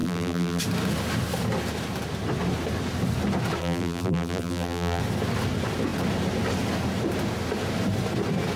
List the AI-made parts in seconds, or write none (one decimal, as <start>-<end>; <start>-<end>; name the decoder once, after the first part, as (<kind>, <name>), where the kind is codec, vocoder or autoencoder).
0.0-0.6 (vocoder, BigVGAN v2); 3.6-5.0